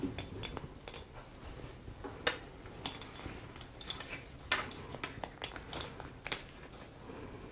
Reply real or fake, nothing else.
real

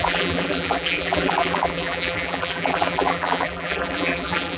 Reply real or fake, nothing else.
fake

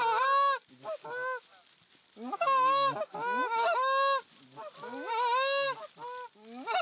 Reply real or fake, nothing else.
real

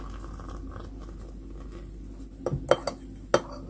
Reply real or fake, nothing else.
real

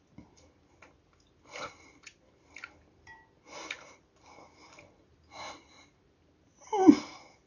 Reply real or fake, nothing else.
real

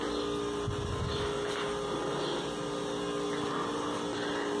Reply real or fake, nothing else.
real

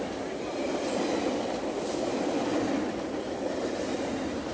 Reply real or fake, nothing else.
real